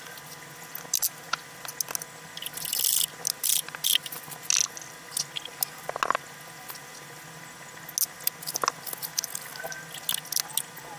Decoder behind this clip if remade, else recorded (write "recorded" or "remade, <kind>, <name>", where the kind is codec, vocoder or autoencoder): recorded